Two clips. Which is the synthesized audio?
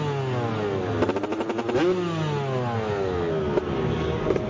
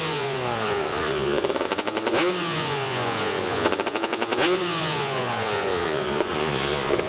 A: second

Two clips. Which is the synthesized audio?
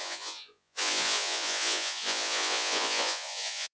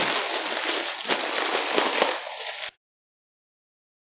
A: first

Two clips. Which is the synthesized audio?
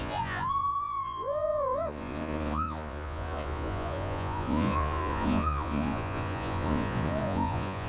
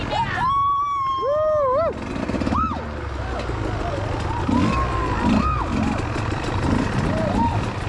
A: first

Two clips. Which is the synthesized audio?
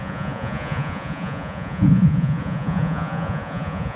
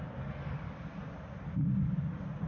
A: first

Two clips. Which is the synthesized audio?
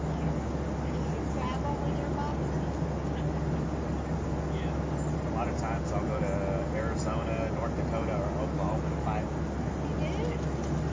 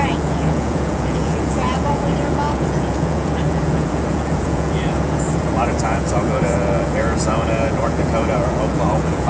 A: second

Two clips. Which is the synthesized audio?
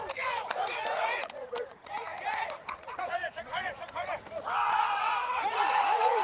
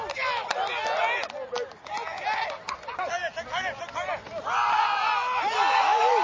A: first